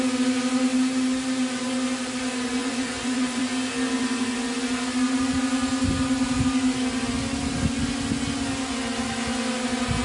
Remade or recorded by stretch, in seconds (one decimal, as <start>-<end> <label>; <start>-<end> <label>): 0.0-2.6 recorded; 2.6-3.4 remade; 3.4-10.0 recorded

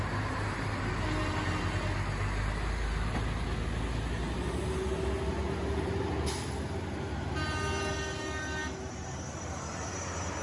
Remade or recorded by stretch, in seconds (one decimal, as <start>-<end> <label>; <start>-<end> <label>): 0.0-10.4 recorded

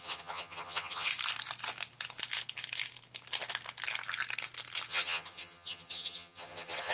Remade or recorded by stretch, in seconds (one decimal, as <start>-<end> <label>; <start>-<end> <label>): 0.0-1.1 remade; 1.1-4.9 recorded; 4.9-6.9 remade

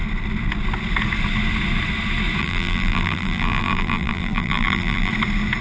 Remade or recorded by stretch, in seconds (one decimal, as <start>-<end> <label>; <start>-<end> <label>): 0.0-2.4 recorded; 2.4-5.1 remade; 5.1-5.6 recorded